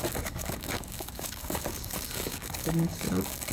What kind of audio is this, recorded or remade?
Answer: remade